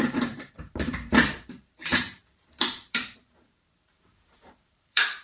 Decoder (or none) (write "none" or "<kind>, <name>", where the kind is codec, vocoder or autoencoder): vocoder, BigVGAN v2